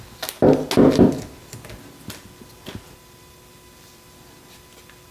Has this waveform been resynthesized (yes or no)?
no